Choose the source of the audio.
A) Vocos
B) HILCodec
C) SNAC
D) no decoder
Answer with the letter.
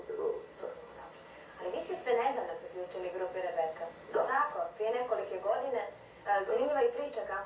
D